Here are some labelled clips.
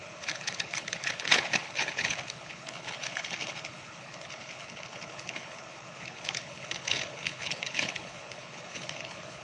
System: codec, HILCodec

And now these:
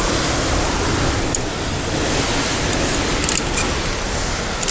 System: none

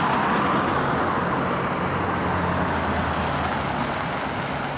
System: none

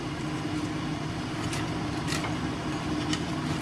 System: none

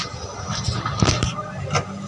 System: none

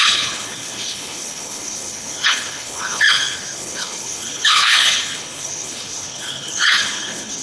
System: codec, HILCodec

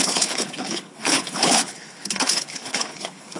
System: codec, HILCodec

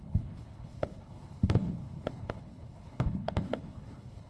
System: codec, HILCodec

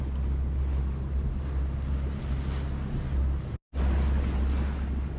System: none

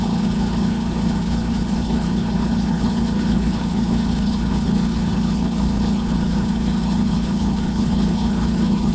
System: codec, HILCodec